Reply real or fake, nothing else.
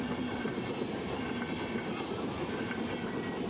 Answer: real